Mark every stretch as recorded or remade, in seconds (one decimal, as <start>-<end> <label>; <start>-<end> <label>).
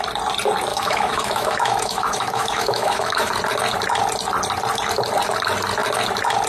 0.0-0.7 recorded; 0.7-3.3 remade; 3.3-6.5 recorded